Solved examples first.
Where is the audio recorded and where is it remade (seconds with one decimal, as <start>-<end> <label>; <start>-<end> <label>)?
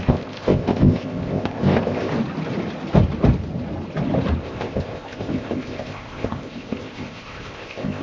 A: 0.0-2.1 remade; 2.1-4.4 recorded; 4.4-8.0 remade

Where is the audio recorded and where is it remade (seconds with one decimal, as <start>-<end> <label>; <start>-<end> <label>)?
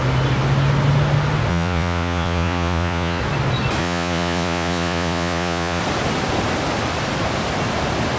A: 0.0-1.5 recorded; 1.5-3.2 remade; 3.2-3.8 recorded; 3.8-5.8 remade; 5.8-8.2 recorded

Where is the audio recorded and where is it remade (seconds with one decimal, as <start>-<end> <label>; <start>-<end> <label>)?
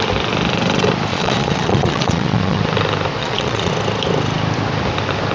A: 0.0-1.1 recorded; 1.1-2.6 remade; 2.6-3.2 recorded; 3.2-3.7 remade; 3.7-5.3 recorded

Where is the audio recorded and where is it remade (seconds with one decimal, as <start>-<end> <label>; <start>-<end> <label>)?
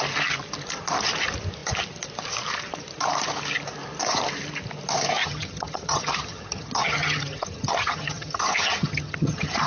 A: 0.0-5.2 recorded; 5.2-9.7 remade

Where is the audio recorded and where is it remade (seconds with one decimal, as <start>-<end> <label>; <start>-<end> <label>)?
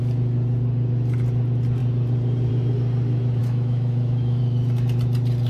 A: 0.0-3.4 recorded; 3.4-4.4 remade; 4.4-5.5 recorded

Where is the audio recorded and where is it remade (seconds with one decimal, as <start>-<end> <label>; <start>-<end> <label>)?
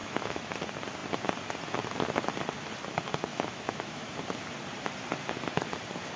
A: 0.0-0.5 remade; 0.5-3.3 recorded; 3.3-4.1 remade; 4.1-6.2 recorded